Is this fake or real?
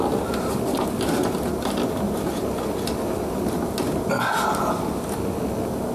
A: real